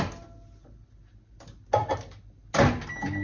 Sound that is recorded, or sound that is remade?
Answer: recorded